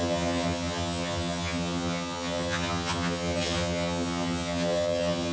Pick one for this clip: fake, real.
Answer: fake